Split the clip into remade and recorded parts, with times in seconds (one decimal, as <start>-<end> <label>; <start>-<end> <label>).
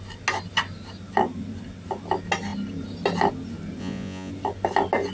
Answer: 0.0-3.8 recorded; 3.8-4.3 remade; 4.3-5.1 recorded